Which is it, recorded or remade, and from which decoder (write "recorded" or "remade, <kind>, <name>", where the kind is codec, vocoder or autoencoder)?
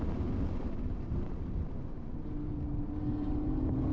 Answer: recorded